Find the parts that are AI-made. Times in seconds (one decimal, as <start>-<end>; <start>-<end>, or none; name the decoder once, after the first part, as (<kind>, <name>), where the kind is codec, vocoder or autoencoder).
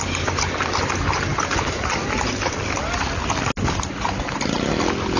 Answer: none